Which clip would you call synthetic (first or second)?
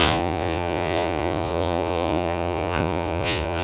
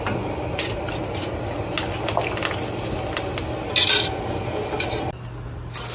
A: first